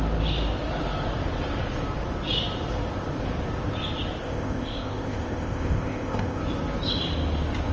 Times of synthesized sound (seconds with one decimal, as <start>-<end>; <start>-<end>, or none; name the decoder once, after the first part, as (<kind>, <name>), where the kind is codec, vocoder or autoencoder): 4.2-6.4 (codec, ZipCodec)